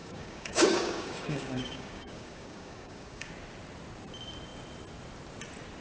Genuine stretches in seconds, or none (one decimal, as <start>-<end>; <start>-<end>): 3.3-5.8